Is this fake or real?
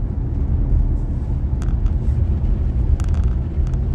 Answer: real